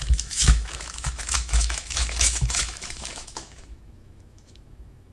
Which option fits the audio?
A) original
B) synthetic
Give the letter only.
B